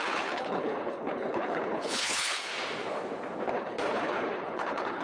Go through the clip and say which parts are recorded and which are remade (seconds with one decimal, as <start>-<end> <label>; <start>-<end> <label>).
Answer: 0.0-2.5 remade; 2.5-3.5 recorded; 3.5-5.0 remade